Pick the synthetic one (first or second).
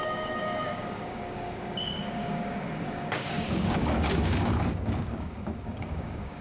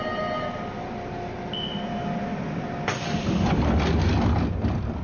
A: first